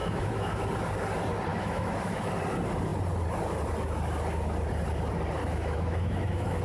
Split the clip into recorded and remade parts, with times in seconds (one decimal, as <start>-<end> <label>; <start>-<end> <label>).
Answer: 0.0-0.6 remade; 0.6-1.5 recorded; 1.5-2.3 remade; 2.3-5.5 recorded; 5.5-6.6 remade